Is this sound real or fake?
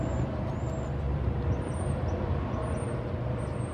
real